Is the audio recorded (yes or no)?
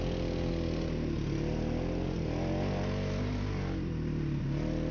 yes